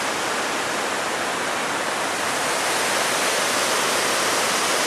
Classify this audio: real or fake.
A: real